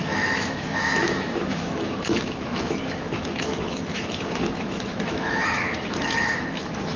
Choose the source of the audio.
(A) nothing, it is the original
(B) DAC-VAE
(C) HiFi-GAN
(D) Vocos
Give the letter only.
B